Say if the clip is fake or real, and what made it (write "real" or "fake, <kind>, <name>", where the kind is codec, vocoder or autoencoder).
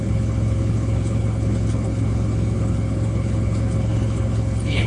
fake, codec, HILCodec